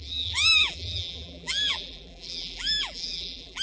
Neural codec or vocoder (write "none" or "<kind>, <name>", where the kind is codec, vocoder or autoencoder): vocoder, BigVGAN v2